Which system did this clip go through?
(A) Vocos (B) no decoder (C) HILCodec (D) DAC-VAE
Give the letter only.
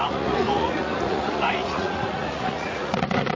A